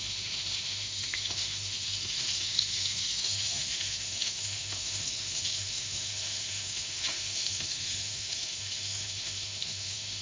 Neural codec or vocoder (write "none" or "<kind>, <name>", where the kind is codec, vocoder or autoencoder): autoencoder, DAC-VAE